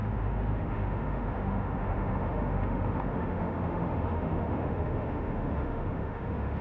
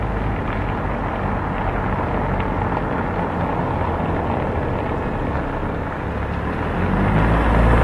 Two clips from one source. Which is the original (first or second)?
second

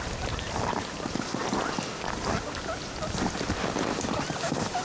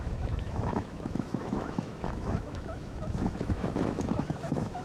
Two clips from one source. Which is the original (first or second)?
first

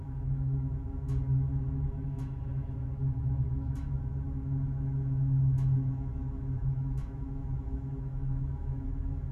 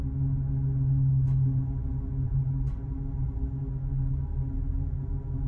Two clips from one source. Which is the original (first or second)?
second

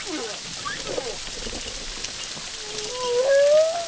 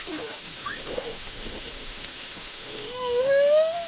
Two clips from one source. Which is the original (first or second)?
first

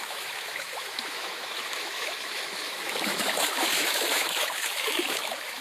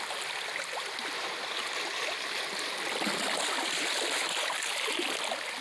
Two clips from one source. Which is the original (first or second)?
second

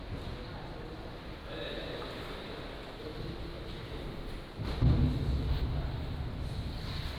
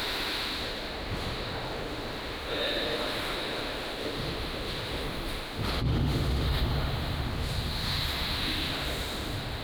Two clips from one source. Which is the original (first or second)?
first